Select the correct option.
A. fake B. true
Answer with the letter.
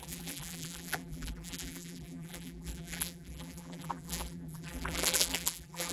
A